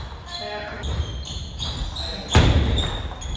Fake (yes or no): no